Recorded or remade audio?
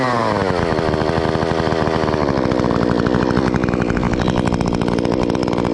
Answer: recorded